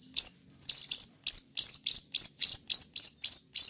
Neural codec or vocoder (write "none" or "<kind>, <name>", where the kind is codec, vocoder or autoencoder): none